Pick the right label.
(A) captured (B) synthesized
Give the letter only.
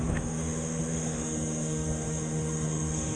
B